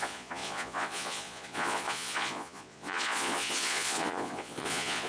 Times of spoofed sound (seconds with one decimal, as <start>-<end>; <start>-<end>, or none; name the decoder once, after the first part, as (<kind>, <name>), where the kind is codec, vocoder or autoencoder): 0.0-5.1 (vocoder, Vocos)